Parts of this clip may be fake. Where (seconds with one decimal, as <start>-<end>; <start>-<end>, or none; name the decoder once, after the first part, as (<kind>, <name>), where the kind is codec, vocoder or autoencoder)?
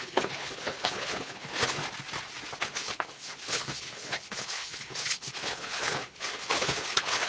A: 0.0-1.8 (codec, HILCodec); 2.6-7.3